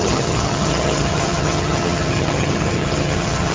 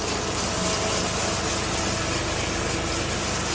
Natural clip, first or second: second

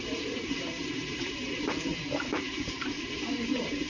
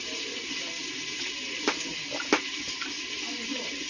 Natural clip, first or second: second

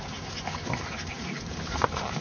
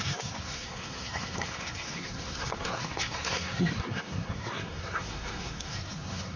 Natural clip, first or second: first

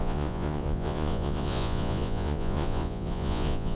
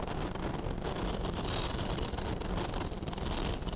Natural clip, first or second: second